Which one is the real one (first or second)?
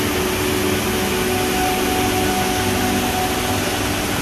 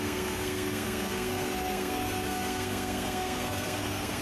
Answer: first